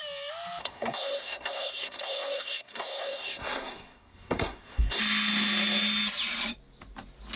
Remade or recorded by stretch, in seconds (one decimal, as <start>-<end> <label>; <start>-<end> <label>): 0.0-0.6 recorded; 0.6-5.0 remade; 5.0-7.4 recorded

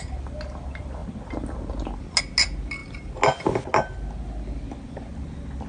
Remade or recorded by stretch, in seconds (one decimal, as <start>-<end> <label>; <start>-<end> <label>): 0.0-5.7 recorded